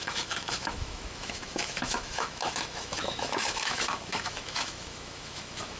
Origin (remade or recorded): remade